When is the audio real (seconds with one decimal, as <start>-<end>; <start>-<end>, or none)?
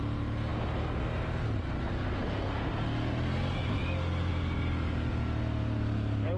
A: 0.0-6.4